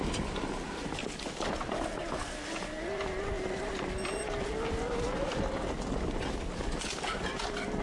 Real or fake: real